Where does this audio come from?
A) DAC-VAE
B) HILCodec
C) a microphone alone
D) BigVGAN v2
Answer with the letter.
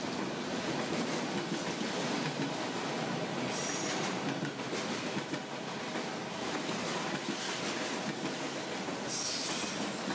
C